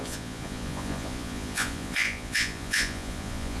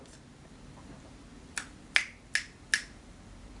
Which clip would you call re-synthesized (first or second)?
first